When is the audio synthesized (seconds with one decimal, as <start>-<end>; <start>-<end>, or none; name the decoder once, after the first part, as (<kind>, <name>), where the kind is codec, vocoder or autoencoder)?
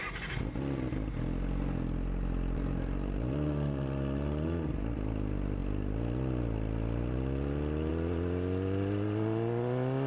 none